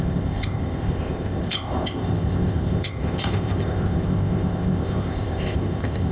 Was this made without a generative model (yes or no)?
no